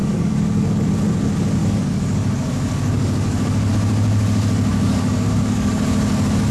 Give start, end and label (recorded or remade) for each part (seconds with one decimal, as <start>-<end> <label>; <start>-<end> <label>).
0.0-0.9 remade; 0.9-1.6 recorded; 1.6-3.7 remade; 3.7-4.7 recorded; 4.7-5.8 remade; 5.8-6.5 recorded